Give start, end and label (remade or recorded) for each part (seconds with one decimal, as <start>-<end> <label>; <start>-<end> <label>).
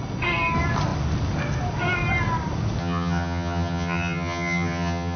0.0-2.8 recorded; 2.8-5.2 remade